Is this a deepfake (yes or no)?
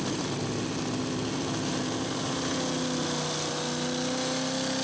no